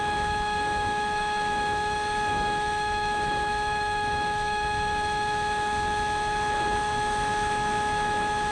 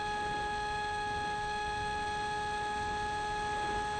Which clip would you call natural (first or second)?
second